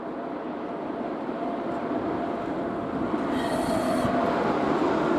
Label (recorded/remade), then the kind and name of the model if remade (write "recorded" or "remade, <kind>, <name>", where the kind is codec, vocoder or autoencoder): recorded